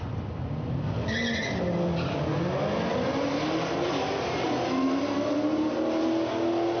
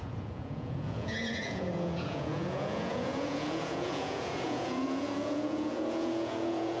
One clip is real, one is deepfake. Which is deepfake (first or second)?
second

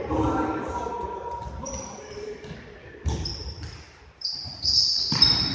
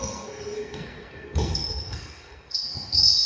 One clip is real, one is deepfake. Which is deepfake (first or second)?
second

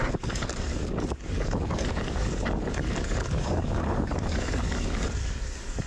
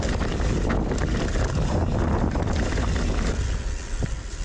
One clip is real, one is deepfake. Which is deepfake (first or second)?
first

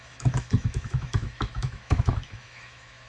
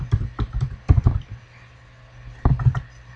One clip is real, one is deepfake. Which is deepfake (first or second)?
first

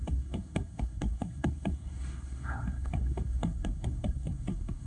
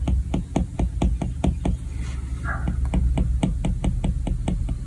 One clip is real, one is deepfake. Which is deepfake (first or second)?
first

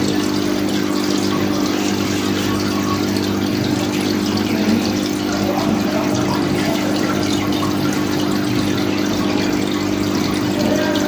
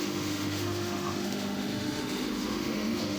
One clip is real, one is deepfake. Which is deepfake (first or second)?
second